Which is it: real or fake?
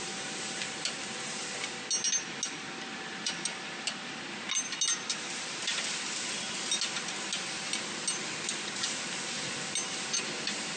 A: real